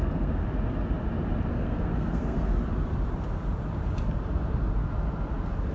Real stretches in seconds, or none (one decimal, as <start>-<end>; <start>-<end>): 0.4-1.5; 2.5-5.7